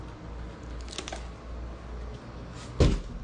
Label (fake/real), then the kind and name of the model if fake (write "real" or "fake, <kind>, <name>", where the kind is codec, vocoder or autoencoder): real